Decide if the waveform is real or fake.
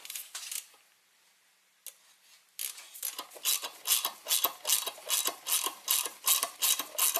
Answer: real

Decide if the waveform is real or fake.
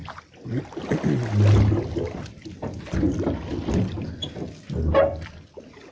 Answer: real